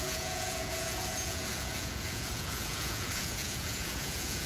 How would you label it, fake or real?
fake